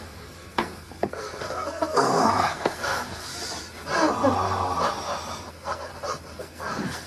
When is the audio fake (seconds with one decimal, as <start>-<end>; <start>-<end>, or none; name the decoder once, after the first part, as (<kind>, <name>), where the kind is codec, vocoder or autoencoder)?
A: 0.0-3.3 (codec, SNAC); 5.5-5.9; 6.4-7.1